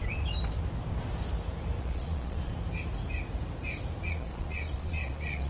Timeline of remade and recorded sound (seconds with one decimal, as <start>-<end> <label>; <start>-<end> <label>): 0.0-1.8 recorded; 1.8-2.5 remade; 2.5-4.1 recorded; 4.1-5.5 remade